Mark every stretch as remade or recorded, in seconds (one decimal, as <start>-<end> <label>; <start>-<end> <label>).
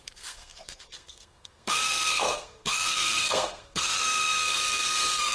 0.0-5.3 remade